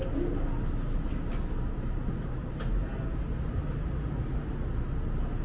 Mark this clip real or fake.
real